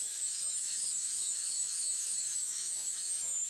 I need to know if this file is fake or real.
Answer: fake